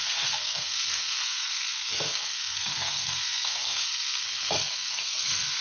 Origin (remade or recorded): remade